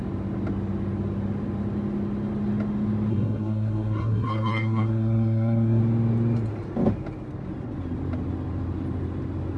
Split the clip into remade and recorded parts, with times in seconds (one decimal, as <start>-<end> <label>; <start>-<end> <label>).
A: 0.0-3.1 recorded; 3.1-5.8 remade; 5.8-9.6 recorded